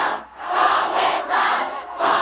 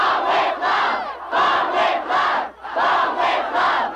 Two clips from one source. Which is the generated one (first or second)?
first